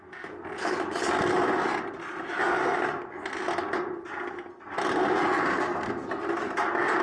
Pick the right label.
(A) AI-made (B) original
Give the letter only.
B